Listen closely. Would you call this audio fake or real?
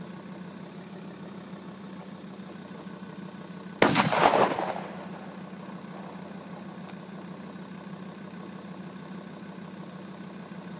real